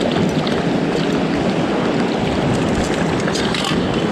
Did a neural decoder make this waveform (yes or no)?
no